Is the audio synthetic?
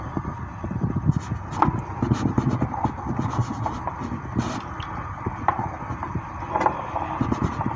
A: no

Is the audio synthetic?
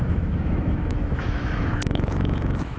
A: yes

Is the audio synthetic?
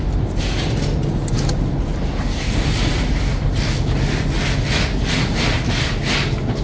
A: no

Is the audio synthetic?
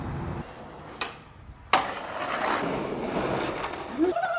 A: no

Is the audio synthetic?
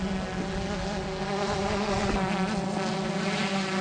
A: no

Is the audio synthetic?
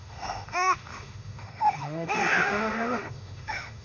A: yes